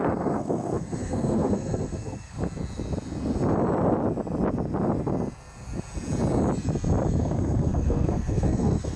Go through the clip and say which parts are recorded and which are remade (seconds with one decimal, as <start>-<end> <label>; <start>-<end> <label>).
0.0-2.4 remade; 2.4-7.2 recorded; 7.2-9.0 remade